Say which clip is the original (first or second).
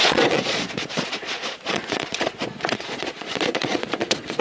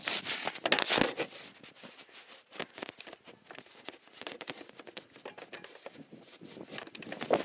second